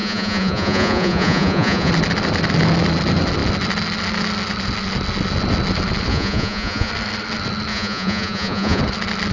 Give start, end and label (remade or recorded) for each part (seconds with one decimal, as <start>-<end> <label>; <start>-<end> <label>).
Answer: 0.0-1.9 remade; 1.9-6.1 recorded; 6.1-6.9 remade; 6.9-7.7 recorded; 7.7-8.8 remade; 8.8-9.3 recorded